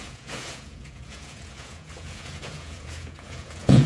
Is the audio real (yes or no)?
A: no